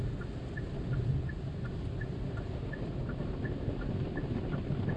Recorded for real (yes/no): yes